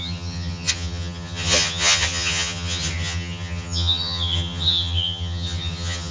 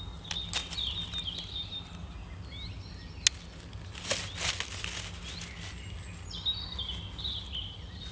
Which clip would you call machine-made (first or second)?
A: first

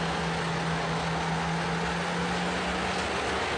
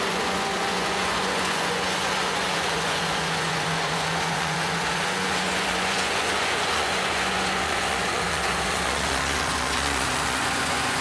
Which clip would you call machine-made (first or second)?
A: second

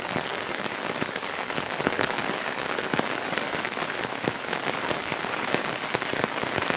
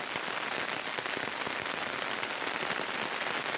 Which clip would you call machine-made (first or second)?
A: first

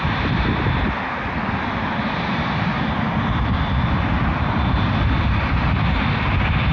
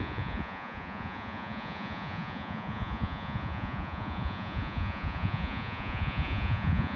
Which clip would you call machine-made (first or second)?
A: second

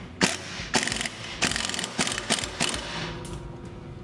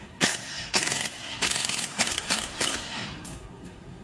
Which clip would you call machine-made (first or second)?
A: second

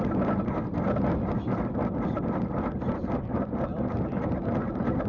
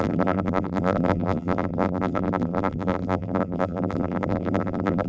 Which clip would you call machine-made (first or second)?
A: second